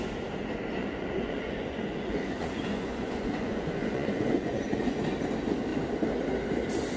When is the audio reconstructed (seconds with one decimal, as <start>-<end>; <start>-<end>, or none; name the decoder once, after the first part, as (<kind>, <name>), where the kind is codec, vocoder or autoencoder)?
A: 0.8-5.0 (vocoder, Vocos)